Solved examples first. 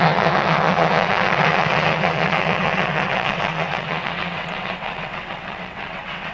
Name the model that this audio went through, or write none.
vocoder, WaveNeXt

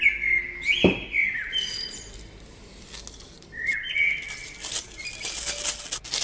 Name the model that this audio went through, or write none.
none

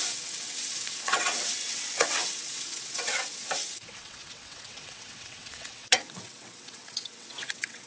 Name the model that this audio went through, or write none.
vocoder, WaveNeXt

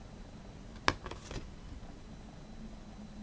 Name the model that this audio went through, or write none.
none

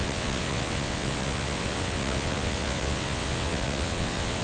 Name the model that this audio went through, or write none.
vocoder, WaveNeXt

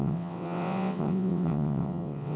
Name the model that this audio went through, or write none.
vocoder, WaveNeXt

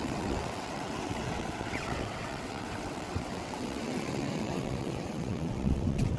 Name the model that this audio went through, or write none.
vocoder, WaveNeXt